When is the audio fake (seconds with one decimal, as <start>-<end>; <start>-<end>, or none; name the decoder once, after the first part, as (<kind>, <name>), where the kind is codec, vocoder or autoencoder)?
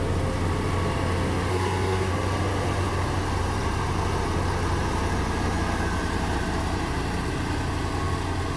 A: 1.5-2.1 (codec, SNAC)